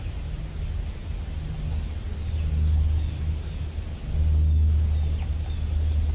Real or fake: real